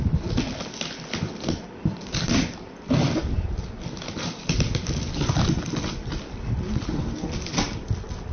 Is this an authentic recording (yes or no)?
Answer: yes